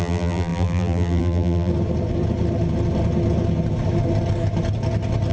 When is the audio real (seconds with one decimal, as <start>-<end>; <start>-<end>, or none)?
1.7-5.3